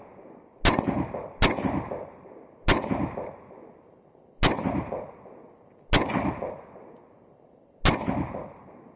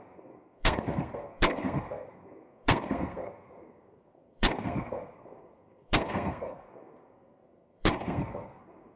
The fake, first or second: second